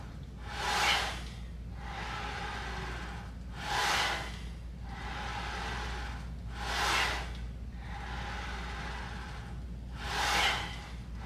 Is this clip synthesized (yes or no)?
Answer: no